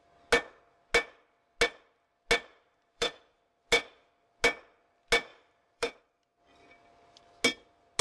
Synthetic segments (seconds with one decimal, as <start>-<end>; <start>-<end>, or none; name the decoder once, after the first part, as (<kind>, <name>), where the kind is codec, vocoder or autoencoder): 2.5-3.1 (vocoder, BigVGAN v2); 5.3-6.0